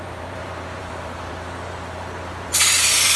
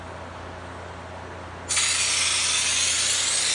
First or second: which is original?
second